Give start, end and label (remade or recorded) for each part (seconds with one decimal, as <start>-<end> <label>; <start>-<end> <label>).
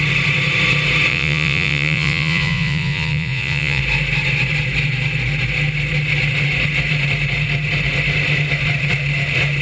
0.0-1.1 recorded; 1.1-3.8 remade; 3.8-9.6 recorded